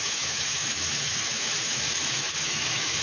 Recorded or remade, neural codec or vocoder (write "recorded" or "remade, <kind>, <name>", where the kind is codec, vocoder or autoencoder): remade, autoencoder, DAC-VAE